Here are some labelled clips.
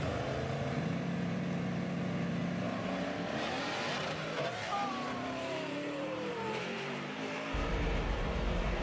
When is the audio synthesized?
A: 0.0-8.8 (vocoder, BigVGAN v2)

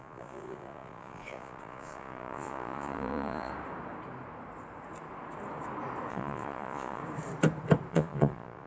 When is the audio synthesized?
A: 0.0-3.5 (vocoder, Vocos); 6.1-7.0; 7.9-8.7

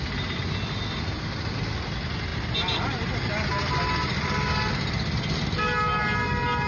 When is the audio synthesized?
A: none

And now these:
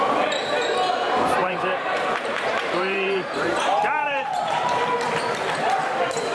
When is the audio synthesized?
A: 1.4-4.9 (vocoder, BigVGAN v2)